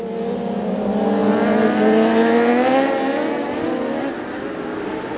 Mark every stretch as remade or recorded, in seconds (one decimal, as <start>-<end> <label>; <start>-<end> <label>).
0.0-5.2 recorded